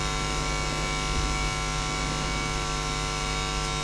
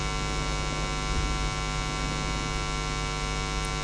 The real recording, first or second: second